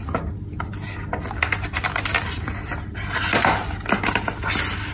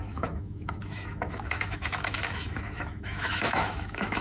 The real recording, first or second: first